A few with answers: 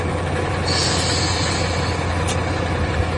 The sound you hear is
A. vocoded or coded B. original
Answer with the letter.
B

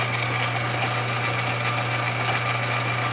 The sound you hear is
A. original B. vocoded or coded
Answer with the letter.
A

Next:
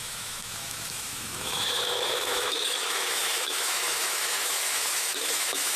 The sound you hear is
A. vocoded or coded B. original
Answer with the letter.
A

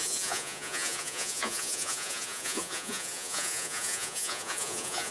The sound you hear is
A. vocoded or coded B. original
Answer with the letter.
A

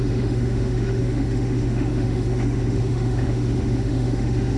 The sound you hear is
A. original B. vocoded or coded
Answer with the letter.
B